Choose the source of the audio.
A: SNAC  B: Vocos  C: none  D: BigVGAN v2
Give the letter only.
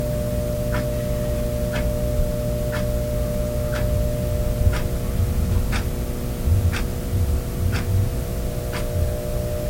C